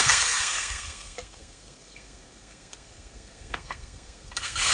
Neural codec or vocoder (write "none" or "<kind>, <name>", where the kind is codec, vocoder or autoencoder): codec, SNAC